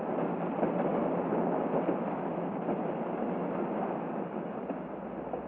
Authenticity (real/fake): real